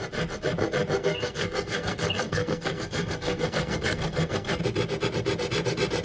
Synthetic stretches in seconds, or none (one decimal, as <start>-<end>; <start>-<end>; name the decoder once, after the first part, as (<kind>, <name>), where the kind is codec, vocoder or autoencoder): 1.0-4.6 (codec, SNAC)